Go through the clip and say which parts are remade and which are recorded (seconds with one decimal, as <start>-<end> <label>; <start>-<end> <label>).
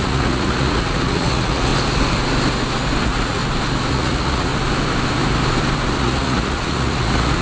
0.0-1.7 remade; 1.7-3.0 recorded; 3.0-3.4 remade; 3.4-3.9 recorded; 3.9-4.5 remade; 4.5-6.0 recorded; 6.0-7.4 remade